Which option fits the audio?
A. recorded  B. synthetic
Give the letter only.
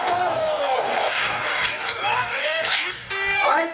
B